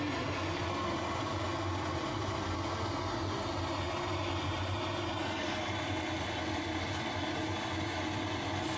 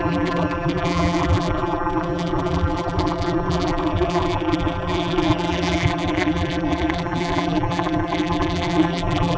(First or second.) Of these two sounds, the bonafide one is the first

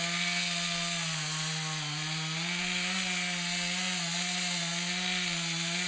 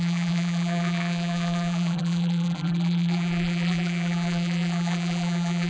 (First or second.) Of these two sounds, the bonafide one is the first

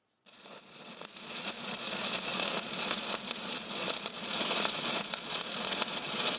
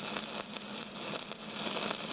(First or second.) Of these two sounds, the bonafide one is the second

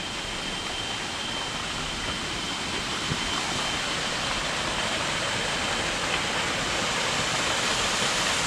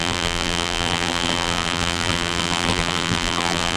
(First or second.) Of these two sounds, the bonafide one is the first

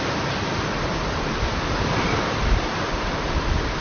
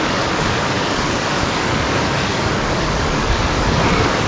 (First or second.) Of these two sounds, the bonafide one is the first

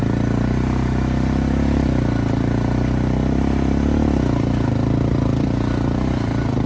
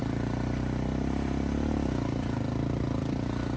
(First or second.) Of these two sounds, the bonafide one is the first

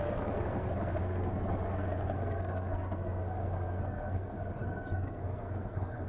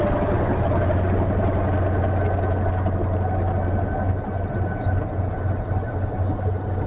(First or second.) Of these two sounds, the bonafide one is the second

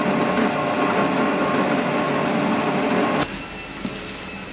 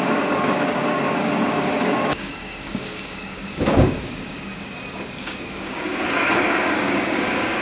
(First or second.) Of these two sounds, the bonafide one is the first